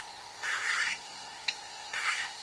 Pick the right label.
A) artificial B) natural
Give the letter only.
A